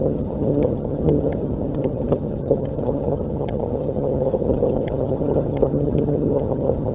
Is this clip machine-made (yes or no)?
yes